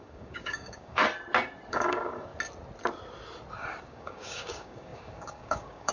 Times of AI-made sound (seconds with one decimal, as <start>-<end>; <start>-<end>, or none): 0.0-1.0; 1.7-2.3; 3.8-5.9